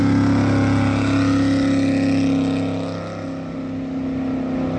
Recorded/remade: recorded